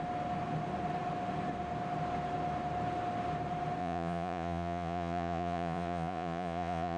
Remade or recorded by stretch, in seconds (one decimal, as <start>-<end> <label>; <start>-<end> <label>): 0.0-3.8 recorded; 3.8-7.0 remade